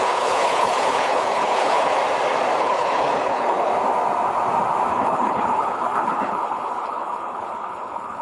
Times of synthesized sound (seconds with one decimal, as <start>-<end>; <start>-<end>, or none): 0.0-2.0; 2.6-3.7; 4.9-8.2